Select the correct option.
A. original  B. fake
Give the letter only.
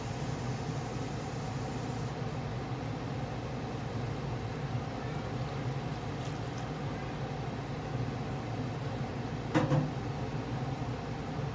A